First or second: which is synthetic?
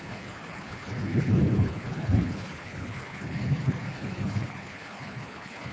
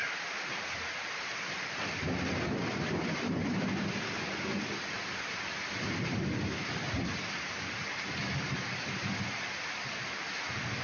first